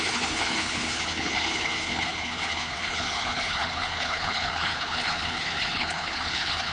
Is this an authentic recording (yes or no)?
no